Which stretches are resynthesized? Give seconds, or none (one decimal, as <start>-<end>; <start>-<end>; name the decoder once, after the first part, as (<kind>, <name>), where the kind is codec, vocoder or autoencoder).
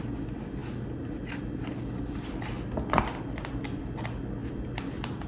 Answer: none